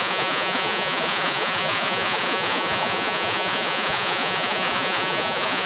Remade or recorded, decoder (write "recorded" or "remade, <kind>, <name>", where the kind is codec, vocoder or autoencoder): remade, vocoder, Vocos